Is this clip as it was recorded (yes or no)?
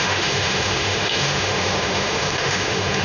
no